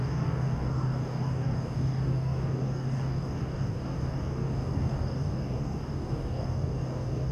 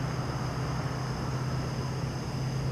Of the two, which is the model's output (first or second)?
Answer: first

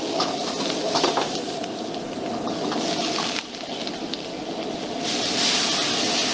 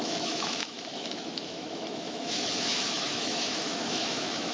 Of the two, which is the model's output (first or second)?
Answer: second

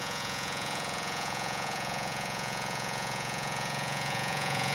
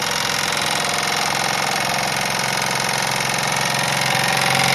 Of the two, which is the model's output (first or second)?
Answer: first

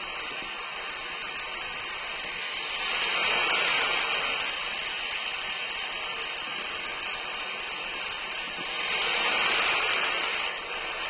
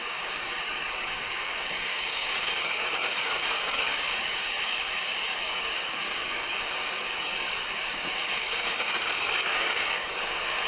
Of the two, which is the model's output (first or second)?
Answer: second